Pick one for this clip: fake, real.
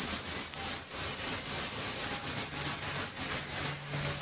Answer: real